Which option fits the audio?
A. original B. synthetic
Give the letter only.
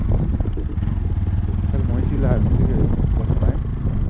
A